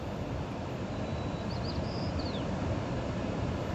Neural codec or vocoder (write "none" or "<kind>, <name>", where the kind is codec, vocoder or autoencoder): vocoder, BigVGAN v2